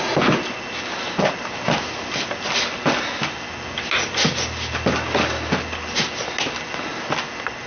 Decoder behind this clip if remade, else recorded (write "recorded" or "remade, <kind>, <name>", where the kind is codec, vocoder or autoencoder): recorded